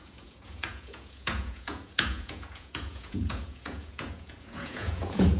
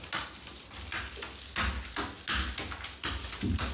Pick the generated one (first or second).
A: first